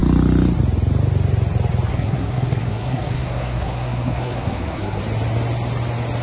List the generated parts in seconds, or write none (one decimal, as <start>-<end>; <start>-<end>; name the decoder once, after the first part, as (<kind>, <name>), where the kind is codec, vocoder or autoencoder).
1.9-5.0 (codec, SNAC)